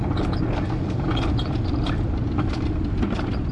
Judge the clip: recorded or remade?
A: recorded